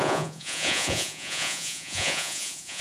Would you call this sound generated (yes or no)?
yes